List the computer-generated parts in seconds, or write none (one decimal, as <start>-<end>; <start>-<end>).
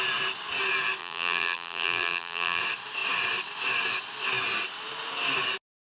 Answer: 1.0-2.6